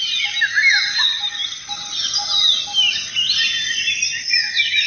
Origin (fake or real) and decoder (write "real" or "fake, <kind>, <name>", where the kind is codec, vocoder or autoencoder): real